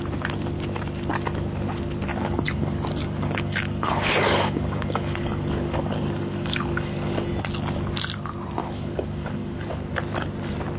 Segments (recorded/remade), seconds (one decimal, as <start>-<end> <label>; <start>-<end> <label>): 0.0-2.1 recorded; 2.1-7.3 remade; 7.3-8.6 recorded; 8.6-9.9 remade; 9.9-10.8 recorded